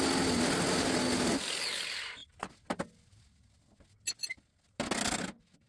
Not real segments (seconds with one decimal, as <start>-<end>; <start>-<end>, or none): none